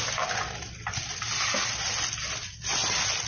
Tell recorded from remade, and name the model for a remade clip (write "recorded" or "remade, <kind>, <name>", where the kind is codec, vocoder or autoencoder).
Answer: recorded